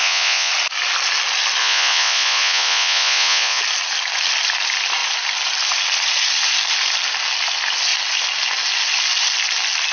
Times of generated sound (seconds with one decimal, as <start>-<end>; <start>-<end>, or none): 0.0-0.5; 1.6-3.6